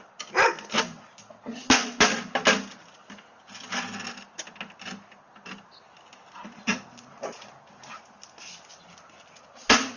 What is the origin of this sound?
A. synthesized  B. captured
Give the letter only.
B